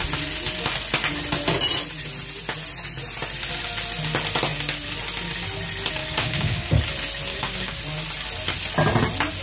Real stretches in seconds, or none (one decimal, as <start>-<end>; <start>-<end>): 0.0-6.0; 6.8-7.3; 7.8-9.4